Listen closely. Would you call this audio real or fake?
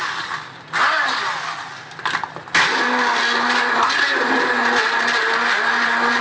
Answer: real